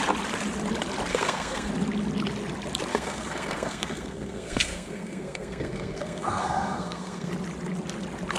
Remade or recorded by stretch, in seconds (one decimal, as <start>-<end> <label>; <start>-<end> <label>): 0.0-1.1 recorded; 1.1-1.7 remade; 1.7-2.9 recorded; 2.9-7.3 remade; 7.3-8.4 recorded